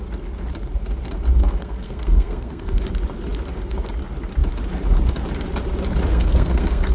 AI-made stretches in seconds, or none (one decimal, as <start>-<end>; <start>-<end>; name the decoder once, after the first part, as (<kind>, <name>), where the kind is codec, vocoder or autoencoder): 1.4-2.8 (codec, SNAC); 6.1-6.9